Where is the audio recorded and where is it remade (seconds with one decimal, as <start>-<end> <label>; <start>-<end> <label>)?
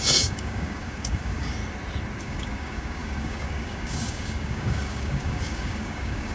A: 0.0-1.6 remade; 1.6-2.2 recorded; 2.2-6.3 remade